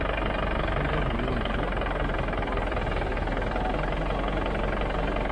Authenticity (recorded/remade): recorded